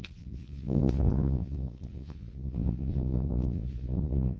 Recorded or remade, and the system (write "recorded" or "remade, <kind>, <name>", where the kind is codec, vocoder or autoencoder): remade, vocoder, Vocos